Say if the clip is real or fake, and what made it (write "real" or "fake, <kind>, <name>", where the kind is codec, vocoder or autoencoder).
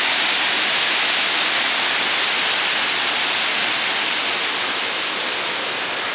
real